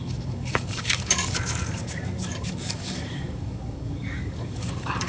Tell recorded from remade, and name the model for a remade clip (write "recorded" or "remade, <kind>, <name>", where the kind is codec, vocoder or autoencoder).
remade, codec, DAC